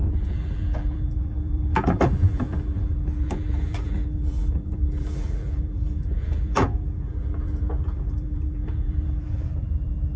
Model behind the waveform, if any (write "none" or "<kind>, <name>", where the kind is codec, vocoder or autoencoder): vocoder, BigVGAN v2